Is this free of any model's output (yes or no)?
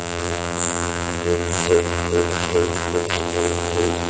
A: no